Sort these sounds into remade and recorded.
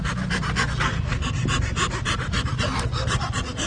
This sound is recorded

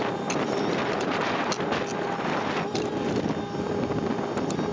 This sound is recorded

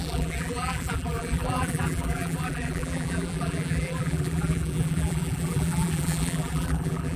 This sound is remade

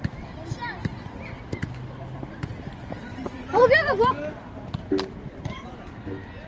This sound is recorded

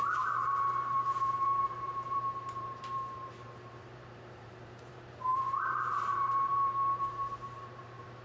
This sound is remade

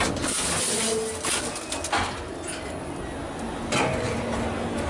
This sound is recorded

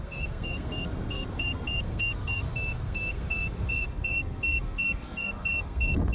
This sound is remade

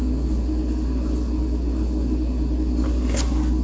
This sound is recorded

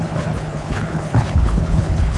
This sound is remade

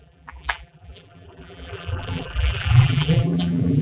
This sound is remade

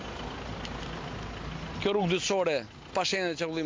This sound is recorded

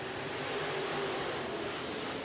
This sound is remade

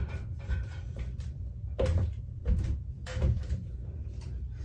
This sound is remade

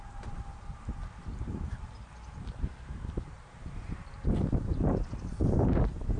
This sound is remade